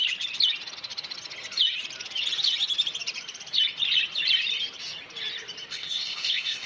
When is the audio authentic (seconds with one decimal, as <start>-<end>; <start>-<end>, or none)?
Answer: 0.0-5.7